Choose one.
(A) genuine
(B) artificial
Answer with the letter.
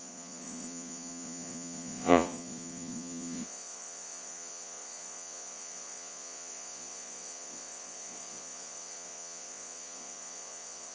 B